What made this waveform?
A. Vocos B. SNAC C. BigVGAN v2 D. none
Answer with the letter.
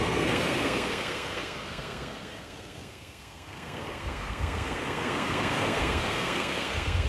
B